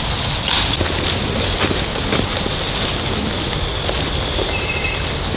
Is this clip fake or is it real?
real